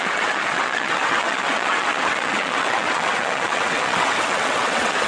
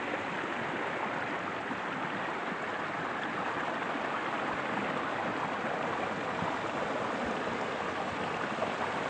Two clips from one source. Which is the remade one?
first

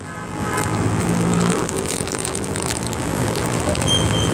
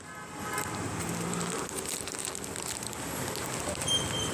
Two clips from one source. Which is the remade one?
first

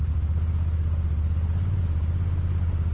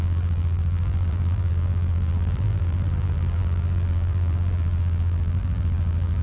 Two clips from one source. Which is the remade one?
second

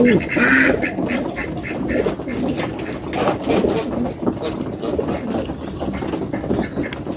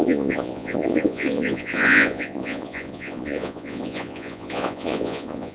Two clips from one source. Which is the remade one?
second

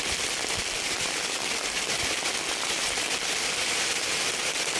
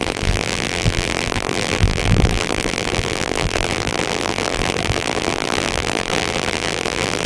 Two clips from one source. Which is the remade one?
second